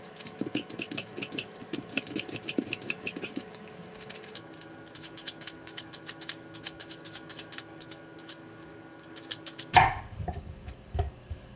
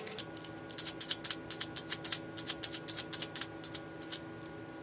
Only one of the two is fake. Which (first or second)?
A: first